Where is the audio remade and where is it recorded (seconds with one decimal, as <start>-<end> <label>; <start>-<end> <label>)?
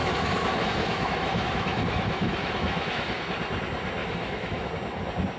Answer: 0.0-3.2 remade; 3.2-4.0 recorded; 4.0-4.7 remade; 4.7-5.4 recorded